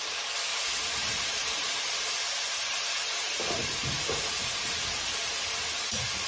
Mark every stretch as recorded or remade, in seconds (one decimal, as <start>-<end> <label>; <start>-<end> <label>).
0.0-0.5 recorded; 0.5-2.9 remade; 2.9-3.6 recorded; 3.6-5.7 remade; 5.7-6.3 recorded